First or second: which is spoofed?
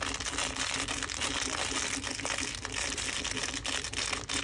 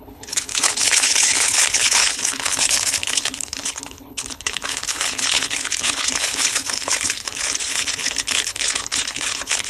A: second